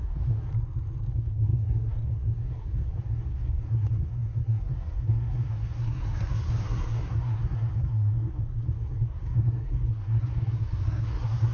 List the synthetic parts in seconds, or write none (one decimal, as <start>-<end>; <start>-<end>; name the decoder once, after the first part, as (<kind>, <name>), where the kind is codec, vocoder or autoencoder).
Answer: 0.0-0.5 (codec, SNAC); 1.1-11.5